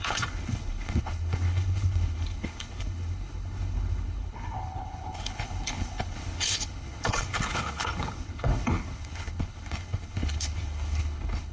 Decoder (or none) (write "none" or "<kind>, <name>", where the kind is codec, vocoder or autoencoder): codec, HILCodec